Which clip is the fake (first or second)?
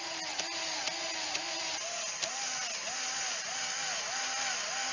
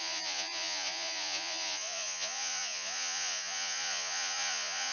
second